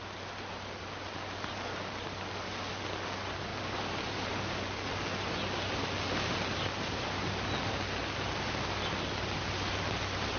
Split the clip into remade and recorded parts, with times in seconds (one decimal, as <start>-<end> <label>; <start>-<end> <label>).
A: 0.0-10.4 recorded